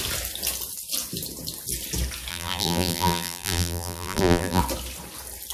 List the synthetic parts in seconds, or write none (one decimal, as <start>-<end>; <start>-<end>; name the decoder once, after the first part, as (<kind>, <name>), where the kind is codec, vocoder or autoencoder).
2.3-4.6 (vocoder, BigVGAN v2)

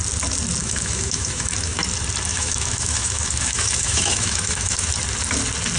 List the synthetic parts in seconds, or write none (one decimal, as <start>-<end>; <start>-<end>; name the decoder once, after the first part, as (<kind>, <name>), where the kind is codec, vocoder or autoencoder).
0.6-1.8 (autoencoder, DAC-VAE); 2.3-4.9

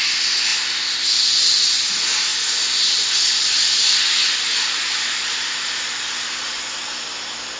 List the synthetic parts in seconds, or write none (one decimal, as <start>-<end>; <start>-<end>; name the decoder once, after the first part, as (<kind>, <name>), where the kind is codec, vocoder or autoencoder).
none

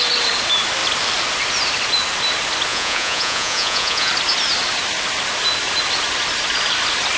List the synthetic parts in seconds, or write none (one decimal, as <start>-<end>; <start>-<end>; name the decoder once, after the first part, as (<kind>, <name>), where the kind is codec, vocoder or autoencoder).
2.7-4.1 (vocoder, Vocos)

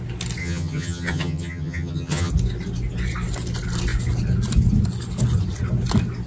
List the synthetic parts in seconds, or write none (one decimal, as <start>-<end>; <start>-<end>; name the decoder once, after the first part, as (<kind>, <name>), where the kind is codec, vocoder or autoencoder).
0.4-2.3 (vocoder, HiFi-GAN)